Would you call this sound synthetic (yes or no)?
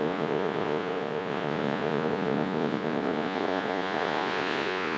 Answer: yes